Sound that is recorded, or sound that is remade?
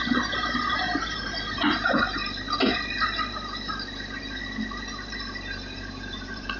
remade